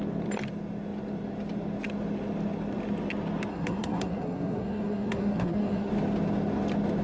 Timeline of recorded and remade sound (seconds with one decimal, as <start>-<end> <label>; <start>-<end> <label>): 0.0-3.5 recorded; 3.5-5.9 remade; 5.9-7.0 recorded